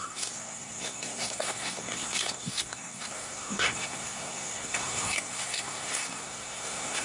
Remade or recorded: remade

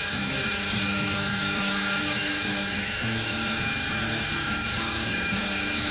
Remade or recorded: remade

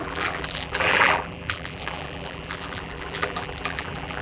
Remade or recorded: remade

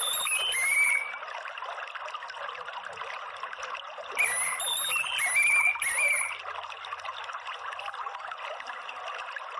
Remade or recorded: recorded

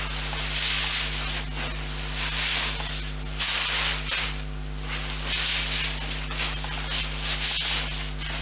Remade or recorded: recorded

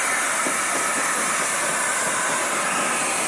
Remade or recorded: recorded